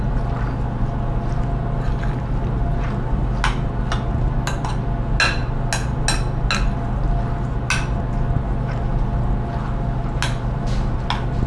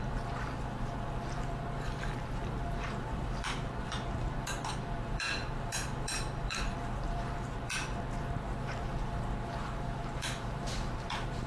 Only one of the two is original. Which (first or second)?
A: first